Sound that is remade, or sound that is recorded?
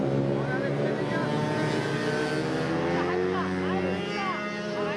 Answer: recorded